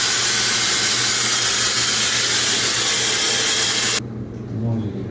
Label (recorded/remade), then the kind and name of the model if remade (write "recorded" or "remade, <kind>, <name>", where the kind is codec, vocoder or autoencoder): recorded